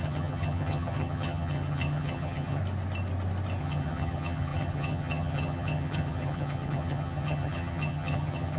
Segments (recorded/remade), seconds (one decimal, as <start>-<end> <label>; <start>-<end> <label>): 0.0-2.6 remade; 2.6-3.6 recorded; 3.6-8.6 remade